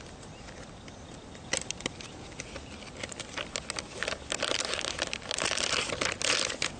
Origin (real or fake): real